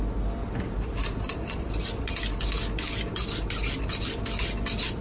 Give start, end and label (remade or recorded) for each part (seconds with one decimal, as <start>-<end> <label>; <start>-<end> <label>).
0.0-0.4 recorded; 0.4-2.1 remade; 2.1-5.0 recorded